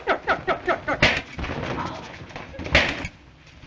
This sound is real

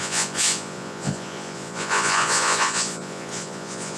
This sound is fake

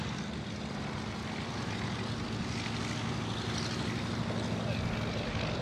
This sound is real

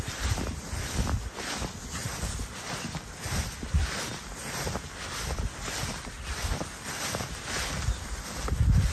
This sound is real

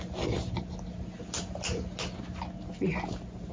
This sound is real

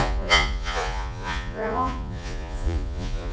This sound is fake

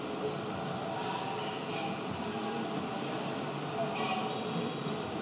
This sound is real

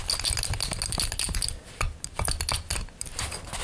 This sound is real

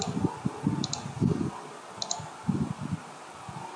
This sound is real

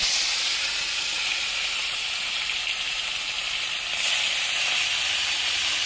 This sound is real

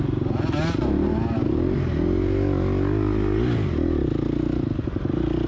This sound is real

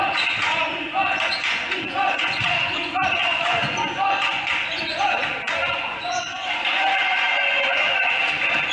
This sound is fake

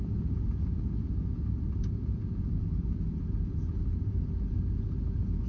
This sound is fake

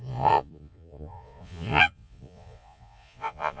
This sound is fake